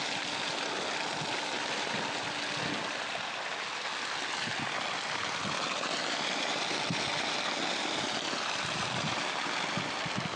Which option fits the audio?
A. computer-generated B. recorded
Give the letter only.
B